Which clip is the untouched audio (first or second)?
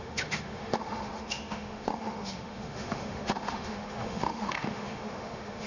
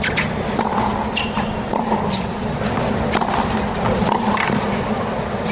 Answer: second